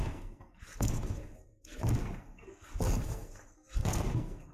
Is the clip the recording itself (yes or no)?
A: no